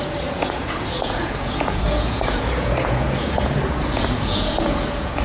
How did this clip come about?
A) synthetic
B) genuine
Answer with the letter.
A